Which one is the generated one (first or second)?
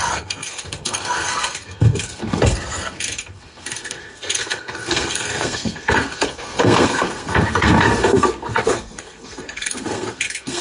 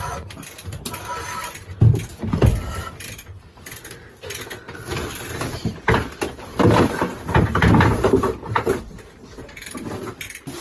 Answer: first